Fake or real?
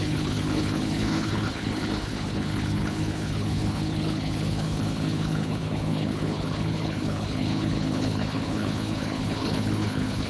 fake